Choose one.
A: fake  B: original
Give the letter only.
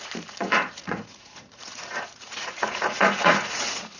A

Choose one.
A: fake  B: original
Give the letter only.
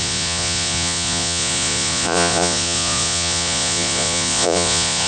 A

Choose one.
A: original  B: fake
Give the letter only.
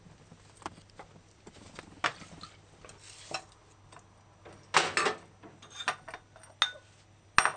A